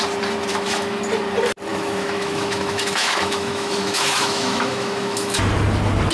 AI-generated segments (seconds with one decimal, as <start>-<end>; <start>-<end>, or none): 0.5-1.0; 1.7-5.4